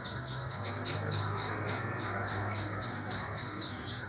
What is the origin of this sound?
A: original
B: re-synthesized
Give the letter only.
B